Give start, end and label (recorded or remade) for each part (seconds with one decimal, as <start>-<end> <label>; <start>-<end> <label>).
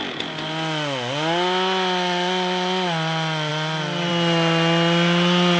0.0-5.6 recorded